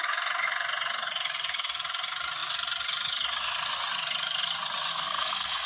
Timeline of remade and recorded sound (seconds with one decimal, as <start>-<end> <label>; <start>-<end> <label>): 0.0-4.9 recorded; 4.9-5.7 remade